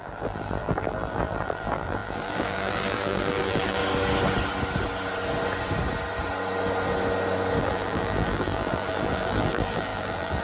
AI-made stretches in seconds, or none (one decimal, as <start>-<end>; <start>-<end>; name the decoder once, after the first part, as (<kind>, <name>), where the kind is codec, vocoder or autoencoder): 0.0-3.8 (vocoder, BigVGAN v2); 7.6-10.4